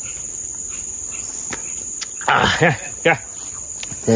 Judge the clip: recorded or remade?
recorded